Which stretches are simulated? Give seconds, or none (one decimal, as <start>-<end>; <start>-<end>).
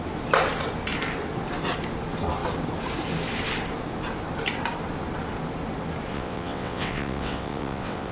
6.1-8.1